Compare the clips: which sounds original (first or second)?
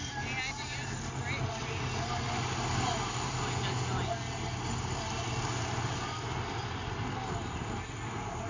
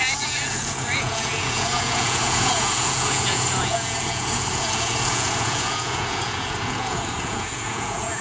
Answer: first